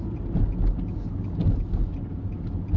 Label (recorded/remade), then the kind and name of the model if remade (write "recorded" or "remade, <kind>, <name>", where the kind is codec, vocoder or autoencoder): recorded